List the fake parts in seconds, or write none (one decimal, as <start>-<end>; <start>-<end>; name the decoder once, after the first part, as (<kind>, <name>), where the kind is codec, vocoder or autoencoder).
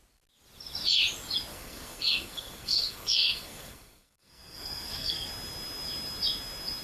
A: 1.5-5.3 (codec, SNAC)